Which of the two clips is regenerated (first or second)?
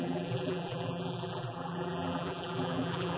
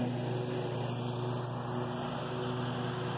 first